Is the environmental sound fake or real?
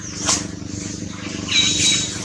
real